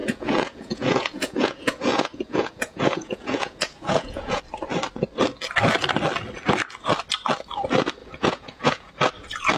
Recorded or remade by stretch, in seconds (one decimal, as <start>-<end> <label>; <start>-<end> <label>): 0.0-4.4 remade; 4.4-8.0 recorded; 8.0-8.9 remade; 8.9-9.6 recorded